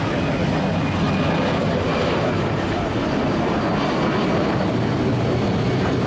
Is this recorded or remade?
recorded